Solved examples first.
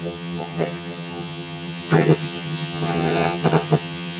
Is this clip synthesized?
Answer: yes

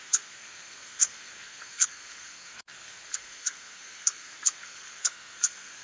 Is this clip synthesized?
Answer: yes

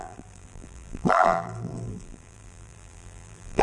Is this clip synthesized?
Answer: yes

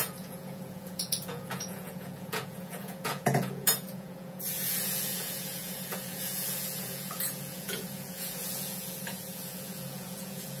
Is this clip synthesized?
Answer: yes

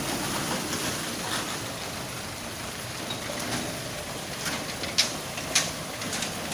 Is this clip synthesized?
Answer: no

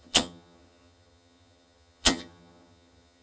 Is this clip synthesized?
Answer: yes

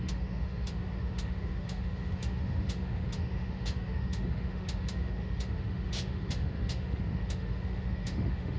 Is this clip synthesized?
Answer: yes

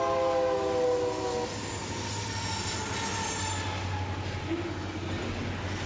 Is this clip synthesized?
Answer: no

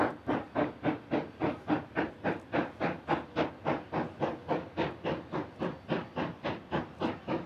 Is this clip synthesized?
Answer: no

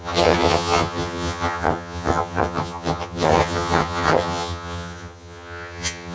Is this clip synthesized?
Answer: yes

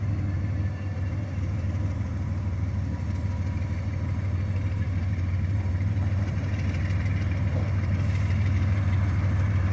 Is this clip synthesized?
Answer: yes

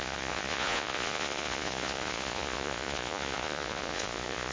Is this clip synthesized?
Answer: yes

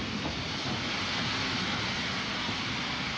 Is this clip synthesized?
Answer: no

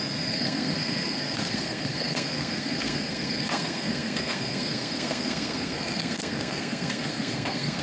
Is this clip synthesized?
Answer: yes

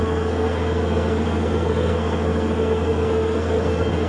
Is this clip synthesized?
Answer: yes